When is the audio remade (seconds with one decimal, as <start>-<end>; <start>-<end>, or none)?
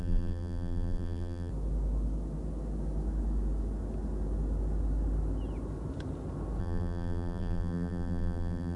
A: 0.0-1.5; 6.6-8.8